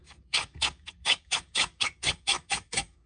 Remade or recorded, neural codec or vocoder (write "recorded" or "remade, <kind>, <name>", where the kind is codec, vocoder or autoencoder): remade, codec, DAC